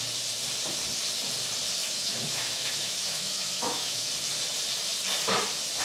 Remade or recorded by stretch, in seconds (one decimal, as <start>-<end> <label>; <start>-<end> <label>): 0.0-1.8 recorded; 1.8-4.1 remade; 4.1-5.8 recorded